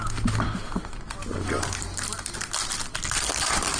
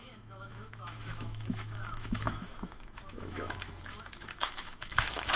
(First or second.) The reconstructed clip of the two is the second